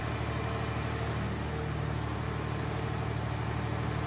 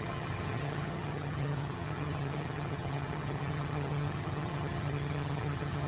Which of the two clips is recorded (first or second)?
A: first